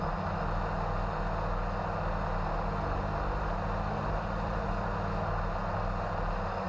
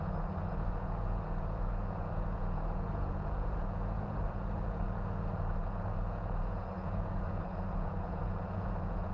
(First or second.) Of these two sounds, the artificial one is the second